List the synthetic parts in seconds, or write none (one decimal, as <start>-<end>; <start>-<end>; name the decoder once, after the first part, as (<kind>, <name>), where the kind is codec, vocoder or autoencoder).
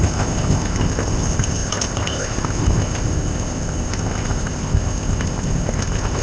0.0-6.2 (codec, ZipCodec)